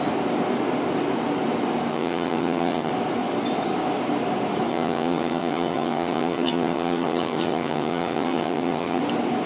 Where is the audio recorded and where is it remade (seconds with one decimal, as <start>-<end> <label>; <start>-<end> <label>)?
0.0-1.9 recorded; 1.9-2.9 remade; 2.9-4.7 recorded; 4.7-9.0 remade; 9.0-9.5 recorded